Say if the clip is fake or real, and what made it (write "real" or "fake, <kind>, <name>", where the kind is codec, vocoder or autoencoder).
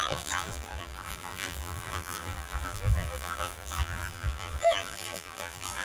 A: fake, vocoder, BigVGAN v2